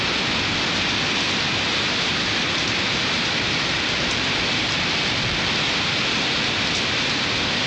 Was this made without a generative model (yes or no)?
yes